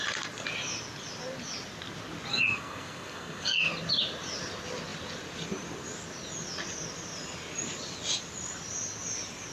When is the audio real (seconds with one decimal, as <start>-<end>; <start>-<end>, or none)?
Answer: 0.0-2.3; 3.7-9.5